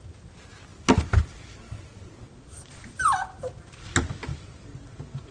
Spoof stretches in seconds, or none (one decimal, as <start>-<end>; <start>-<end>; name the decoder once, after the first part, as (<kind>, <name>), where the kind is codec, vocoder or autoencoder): 0.7-3.9 (vocoder, BigVGAN v2); 4.3-5.3